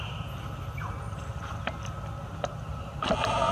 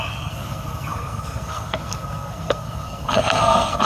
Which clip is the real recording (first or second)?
first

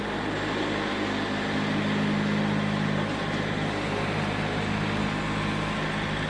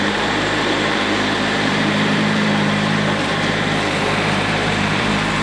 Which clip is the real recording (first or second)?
first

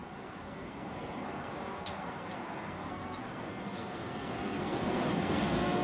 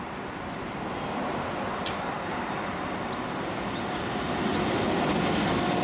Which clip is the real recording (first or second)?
second